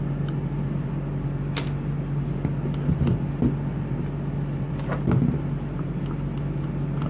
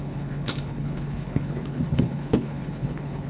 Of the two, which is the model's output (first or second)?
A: second